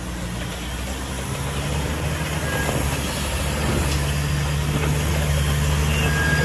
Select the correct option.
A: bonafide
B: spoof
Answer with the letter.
A